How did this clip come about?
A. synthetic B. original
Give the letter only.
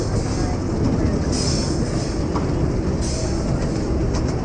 B